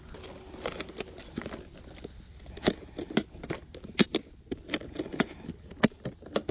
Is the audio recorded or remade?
recorded